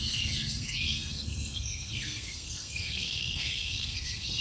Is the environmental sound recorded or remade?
remade